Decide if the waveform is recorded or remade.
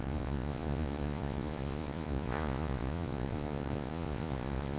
remade